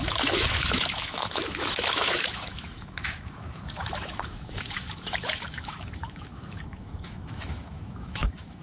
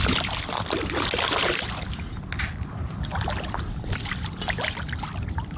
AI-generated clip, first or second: first